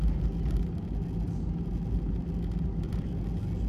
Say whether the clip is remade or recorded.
recorded